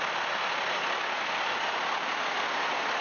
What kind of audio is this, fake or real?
real